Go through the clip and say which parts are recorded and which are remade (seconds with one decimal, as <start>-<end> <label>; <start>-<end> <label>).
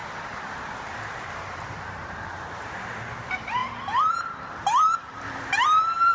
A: 0.0-0.9 recorded; 0.9-3.6 remade; 3.6-4.1 recorded; 4.1-6.1 remade